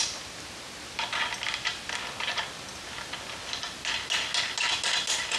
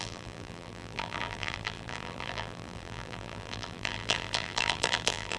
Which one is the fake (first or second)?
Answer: second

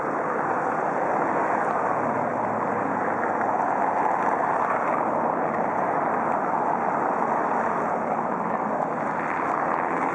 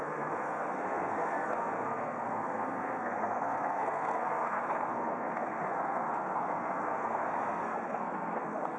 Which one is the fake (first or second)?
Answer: second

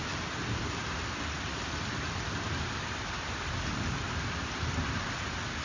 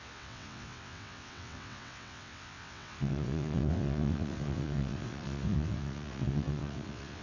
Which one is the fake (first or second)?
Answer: second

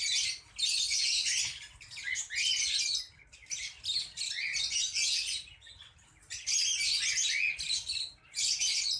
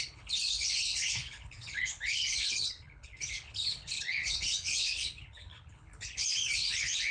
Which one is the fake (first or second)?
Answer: second